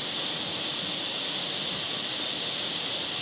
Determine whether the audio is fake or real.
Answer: real